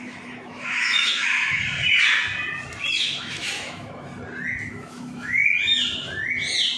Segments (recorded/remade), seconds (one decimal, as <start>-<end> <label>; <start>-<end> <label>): 0.0-1.6 remade; 1.6-2.9 recorded; 2.9-4.1 remade; 4.1-4.7 recorded; 4.7-5.4 remade; 5.4-6.8 recorded